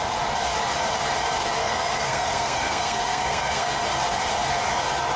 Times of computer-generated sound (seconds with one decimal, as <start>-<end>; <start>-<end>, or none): 1.6-3.8